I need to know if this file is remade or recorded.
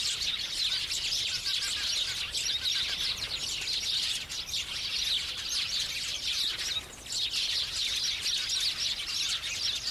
recorded